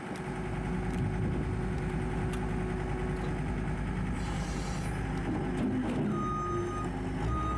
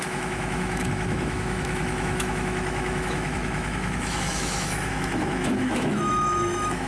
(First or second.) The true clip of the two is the first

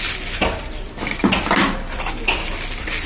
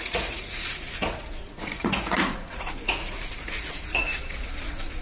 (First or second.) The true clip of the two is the first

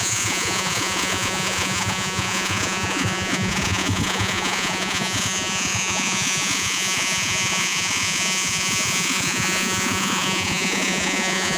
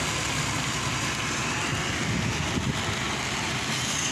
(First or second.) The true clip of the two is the second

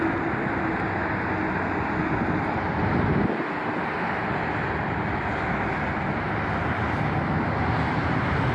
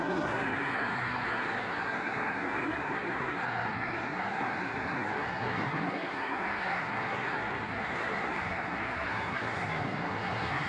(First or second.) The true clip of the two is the first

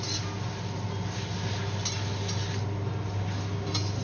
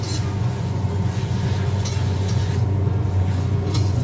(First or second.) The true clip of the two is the first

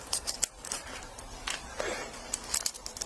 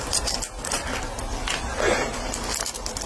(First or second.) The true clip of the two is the second